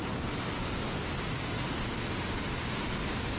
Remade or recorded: recorded